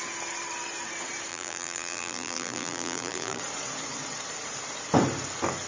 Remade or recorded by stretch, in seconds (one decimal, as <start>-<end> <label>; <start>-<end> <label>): 0.0-1.3 recorded; 1.3-3.4 remade; 3.4-5.7 recorded

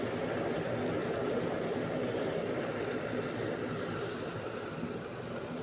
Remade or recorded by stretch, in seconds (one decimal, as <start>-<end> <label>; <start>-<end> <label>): 0.0-1.0 recorded; 1.0-1.6 remade; 1.6-2.0 recorded; 2.0-3.1 remade; 3.1-5.6 recorded

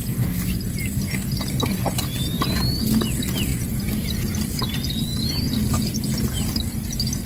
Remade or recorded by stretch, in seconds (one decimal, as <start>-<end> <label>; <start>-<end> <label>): 0.0-3.5 recorded; 3.5-4.6 remade; 4.6-7.3 recorded